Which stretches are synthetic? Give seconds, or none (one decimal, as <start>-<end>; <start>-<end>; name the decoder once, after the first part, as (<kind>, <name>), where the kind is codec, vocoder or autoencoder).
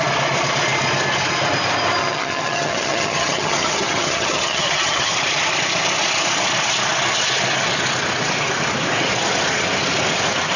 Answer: 2.0-5.1 (vocoder, HiFi-GAN)